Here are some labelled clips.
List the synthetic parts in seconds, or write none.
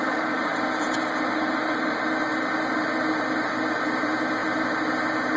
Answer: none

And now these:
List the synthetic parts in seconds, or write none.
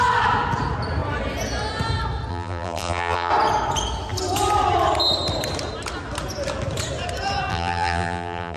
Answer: 2.3-3.3; 7.5-8.6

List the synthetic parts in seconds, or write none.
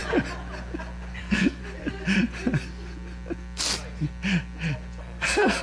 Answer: 1.2-1.6; 5.0-5.6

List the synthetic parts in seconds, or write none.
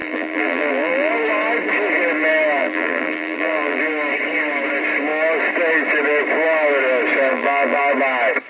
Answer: 0.0-1.1; 2.6-3.8; 7.3-7.8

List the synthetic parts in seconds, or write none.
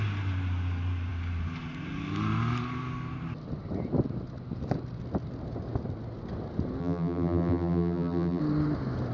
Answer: 6.8-8.4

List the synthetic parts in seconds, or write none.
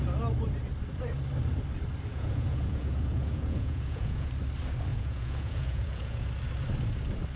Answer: 2.1-4.3; 4.9-6.3